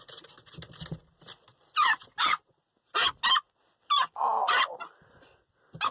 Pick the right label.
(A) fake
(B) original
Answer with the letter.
B